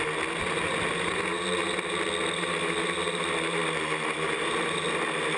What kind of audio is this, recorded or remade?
recorded